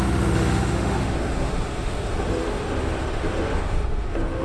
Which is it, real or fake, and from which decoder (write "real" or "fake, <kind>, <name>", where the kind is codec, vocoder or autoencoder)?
fake, autoencoder, DAC-VAE